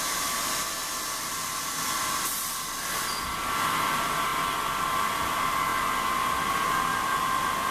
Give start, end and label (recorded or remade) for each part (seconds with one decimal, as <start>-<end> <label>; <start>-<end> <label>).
0.0-4.3 remade; 4.3-4.8 recorded; 4.8-5.7 remade; 5.7-6.7 recorded; 6.7-7.7 remade